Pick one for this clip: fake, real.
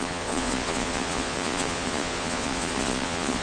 fake